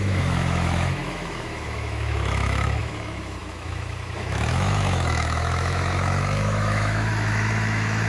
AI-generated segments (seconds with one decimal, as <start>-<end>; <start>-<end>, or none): 0.0-8.1